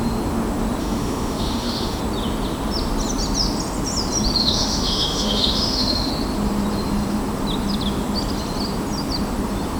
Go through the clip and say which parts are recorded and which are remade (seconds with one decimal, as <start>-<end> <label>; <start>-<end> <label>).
0.0-0.8 recorded; 0.8-2.0 remade; 2.0-4.4 recorded; 4.4-6.1 remade; 6.1-9.8 recorded